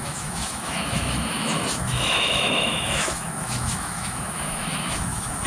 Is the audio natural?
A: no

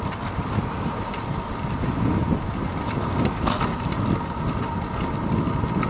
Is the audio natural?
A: yes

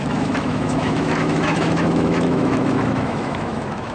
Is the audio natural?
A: no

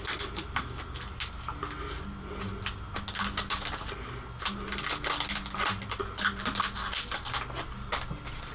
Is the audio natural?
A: yes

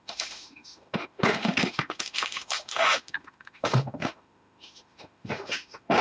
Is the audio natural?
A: no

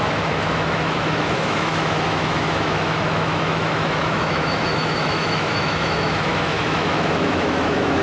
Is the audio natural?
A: no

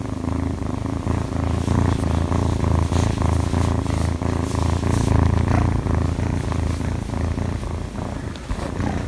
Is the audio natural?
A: yes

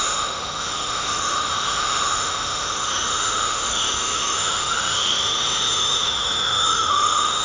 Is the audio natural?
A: no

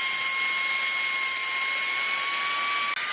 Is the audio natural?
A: yes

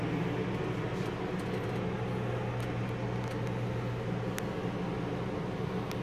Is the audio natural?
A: yes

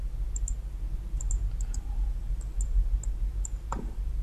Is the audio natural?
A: yes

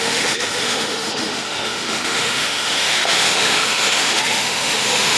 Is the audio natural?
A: no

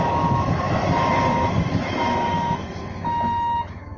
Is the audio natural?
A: no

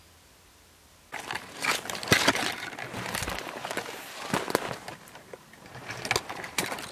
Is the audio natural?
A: yes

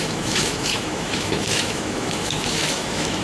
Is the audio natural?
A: no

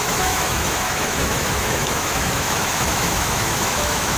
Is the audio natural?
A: no